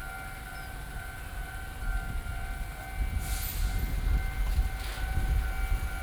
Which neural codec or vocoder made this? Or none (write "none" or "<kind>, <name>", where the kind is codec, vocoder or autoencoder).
none